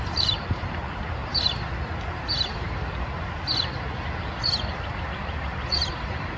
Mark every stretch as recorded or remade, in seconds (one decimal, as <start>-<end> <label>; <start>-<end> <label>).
0.0-1.2 remade; 1.2-5.0 recorded; 5.0-6.4 remade